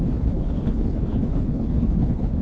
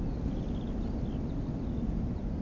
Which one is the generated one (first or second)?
first